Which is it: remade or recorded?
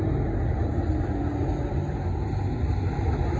recorded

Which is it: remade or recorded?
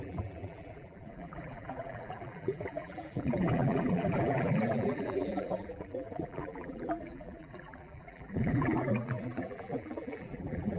remade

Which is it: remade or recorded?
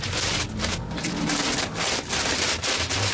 recorded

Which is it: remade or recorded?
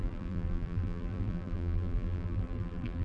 remade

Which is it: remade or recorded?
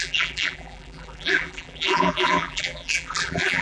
remade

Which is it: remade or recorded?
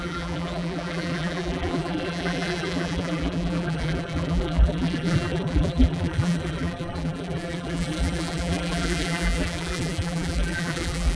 remade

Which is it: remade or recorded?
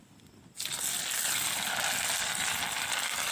recorded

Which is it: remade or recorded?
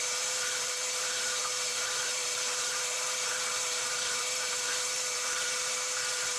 remade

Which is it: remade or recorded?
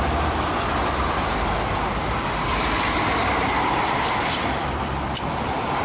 remade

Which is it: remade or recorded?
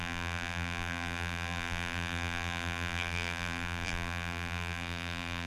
remade